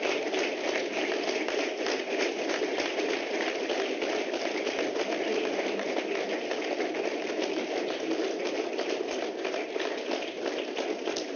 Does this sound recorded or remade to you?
recorded